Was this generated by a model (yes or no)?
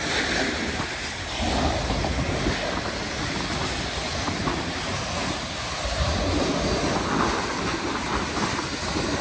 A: no